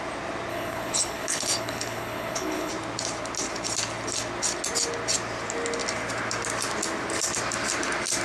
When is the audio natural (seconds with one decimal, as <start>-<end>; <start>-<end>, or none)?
0.0-0.5; 2.7-8.2